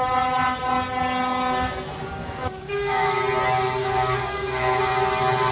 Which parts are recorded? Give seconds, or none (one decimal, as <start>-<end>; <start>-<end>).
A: 0.0-2.1; 3.2-3.8; 4.8-5.5